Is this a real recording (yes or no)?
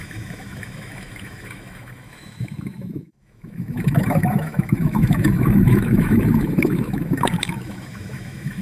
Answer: no